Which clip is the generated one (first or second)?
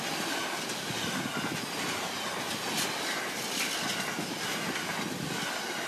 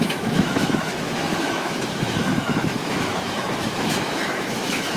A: second